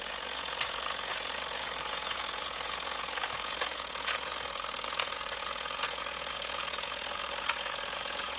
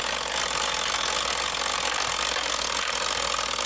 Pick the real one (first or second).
second